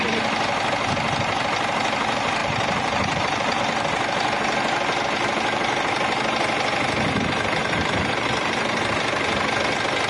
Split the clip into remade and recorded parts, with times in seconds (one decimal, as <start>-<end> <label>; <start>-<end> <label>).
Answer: 0.0-2.4 recorded; 2.4-3.6 remade; 3.6-7.6 recorded; 7.6-8.9 remade; 8.9-10.1 recorded